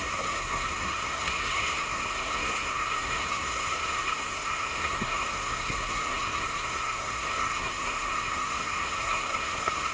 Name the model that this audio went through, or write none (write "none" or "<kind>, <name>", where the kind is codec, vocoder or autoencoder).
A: codec, SNAC